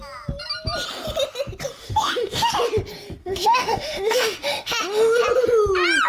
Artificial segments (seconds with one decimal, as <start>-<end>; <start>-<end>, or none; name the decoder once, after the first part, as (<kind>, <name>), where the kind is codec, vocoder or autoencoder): 1.8-2.5 (autoencoder, DAC-VAE); 3.2-5.2